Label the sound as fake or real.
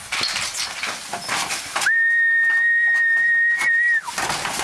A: real